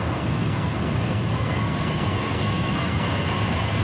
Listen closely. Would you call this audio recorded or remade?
remade